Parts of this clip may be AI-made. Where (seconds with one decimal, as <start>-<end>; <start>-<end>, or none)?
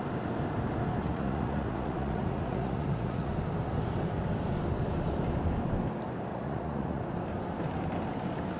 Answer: 1.1-3.3; 6.3-7.0